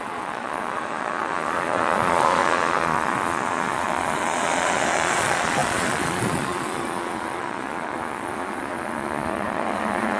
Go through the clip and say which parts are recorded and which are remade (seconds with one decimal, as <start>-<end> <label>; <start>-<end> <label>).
0.0-10.2 remade